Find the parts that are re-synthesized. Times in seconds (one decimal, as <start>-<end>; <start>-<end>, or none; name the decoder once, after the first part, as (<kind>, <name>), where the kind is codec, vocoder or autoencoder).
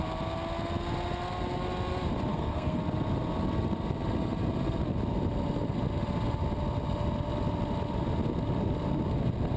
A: 2.3-2.8 (codec, SNAC)